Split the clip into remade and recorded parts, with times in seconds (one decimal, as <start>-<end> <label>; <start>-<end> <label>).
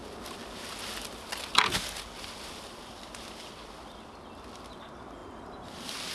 0.0-6.1 recorded